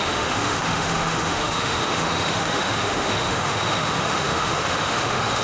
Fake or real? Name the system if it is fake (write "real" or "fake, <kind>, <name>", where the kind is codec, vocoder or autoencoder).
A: fake, autoencoder, DAC-VAE